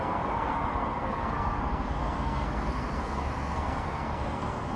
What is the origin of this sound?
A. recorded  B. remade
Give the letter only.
B